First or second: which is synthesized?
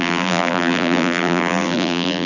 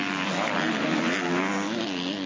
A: first